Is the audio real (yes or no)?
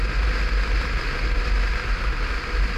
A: yes